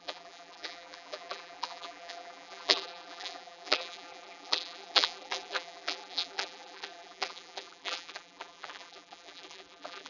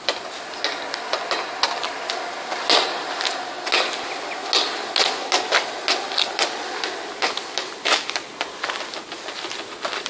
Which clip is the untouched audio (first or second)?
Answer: second